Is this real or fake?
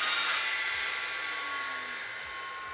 real